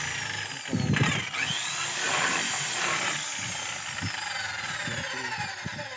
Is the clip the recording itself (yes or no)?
yes